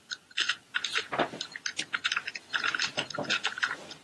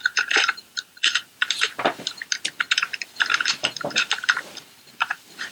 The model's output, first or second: second